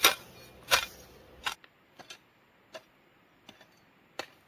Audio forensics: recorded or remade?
recorded